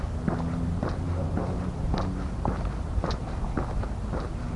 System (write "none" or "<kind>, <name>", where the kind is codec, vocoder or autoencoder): none